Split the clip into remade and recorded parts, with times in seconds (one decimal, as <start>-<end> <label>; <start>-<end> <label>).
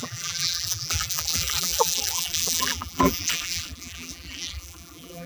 0.0-5.3 remade